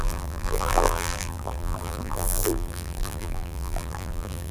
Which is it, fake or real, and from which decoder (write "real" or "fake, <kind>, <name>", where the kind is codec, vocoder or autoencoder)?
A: fake, vocoder, BigVGAN v2